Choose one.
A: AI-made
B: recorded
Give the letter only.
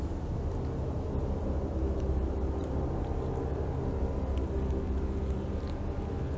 B